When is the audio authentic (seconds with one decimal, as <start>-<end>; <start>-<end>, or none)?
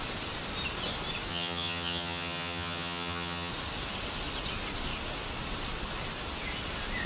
0.0-1.3; 3.5-7.1